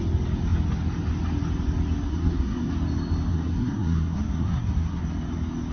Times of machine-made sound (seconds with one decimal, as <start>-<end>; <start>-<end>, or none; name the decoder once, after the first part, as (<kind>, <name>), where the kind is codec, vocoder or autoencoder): 2.1-2.7 (codec, SNAC); 3.3-5.0